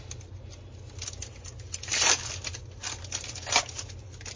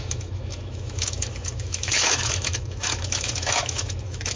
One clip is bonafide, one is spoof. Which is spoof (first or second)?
second